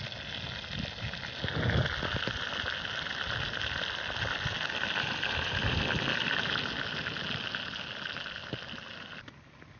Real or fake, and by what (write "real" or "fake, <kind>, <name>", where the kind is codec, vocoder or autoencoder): real